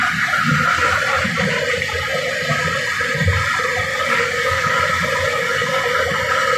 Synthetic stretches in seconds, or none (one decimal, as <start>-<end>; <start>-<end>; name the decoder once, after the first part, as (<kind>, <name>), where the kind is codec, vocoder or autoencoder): 3.9-4.8 (codec, DAC); 5.3-5.8